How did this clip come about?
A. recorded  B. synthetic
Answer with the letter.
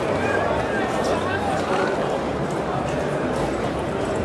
B